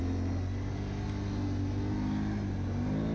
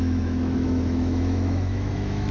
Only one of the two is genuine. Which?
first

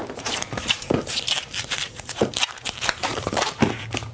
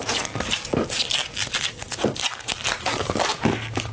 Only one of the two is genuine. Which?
second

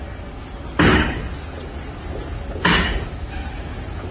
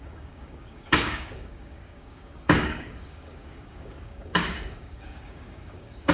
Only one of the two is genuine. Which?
first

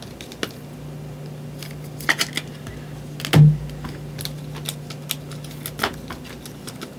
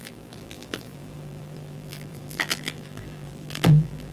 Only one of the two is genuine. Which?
first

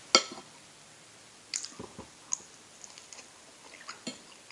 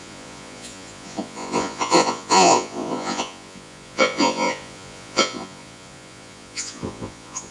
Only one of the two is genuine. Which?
first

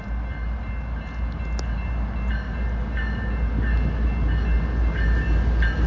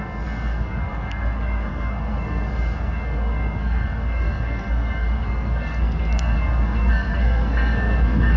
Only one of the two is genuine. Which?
first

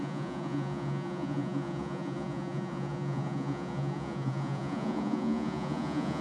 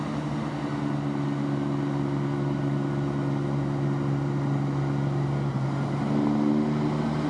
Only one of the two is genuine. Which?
second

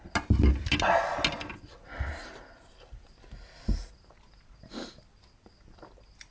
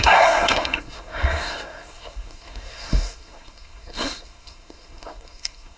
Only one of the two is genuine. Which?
first